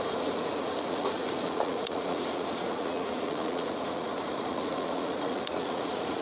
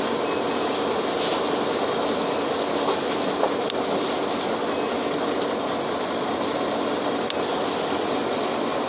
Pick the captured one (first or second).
second